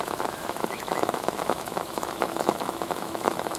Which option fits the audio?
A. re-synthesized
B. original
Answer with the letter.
A